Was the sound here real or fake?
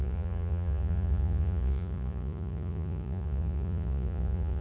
fake